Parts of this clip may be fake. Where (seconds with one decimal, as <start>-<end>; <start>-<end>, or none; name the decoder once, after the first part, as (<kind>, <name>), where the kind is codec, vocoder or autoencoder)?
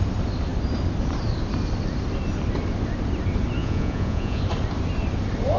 3.6-4.4 (vocoder, Vocos)